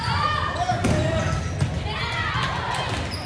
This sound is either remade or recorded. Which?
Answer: recorded